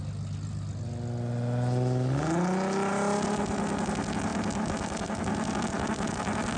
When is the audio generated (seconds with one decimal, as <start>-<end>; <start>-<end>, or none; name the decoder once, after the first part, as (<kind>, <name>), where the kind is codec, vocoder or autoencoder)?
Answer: none